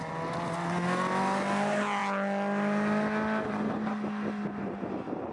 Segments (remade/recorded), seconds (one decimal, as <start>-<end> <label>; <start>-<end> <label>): 0.0-5.3 recorded